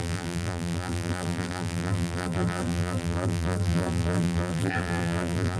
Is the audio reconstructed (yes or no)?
yes